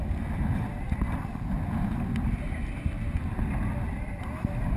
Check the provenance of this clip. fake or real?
real